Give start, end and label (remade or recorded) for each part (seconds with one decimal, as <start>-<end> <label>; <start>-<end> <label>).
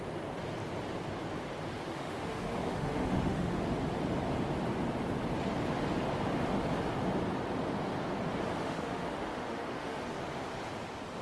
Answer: 0.0-1.9 recorded; 1.9-3.6 remade; 3.6-8.6 recorded; 8.6-10.0 remade; 10.0-11.2 recorded